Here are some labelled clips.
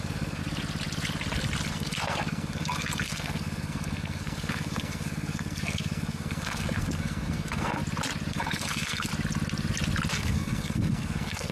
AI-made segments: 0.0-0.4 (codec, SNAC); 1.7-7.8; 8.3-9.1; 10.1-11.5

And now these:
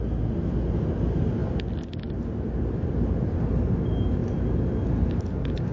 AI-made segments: none

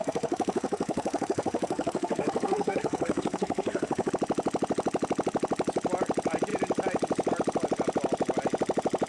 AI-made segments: 0.0-4.1 (codec, SNAC)

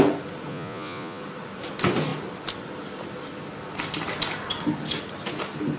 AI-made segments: 0.5-1.2 (vocoder, Vocos)

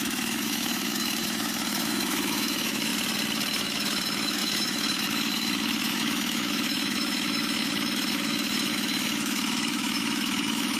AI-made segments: 0.0-2.9 (autoencoder, DAC-VAE); 3.5-10.8

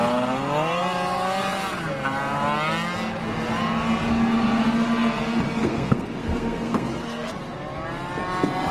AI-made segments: 5.6-7.3 (codec, SNAC)

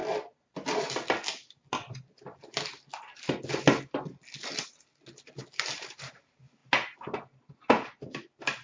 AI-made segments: none